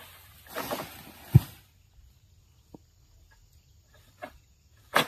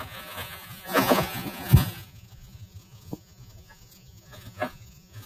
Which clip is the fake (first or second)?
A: second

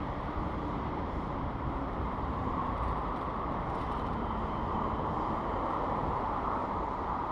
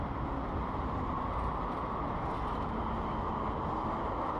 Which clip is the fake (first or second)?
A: first